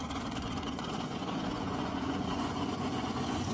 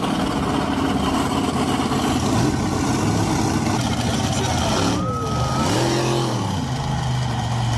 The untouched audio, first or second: second